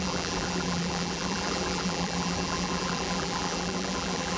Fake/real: fake